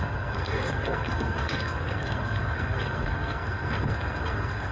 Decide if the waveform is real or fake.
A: fake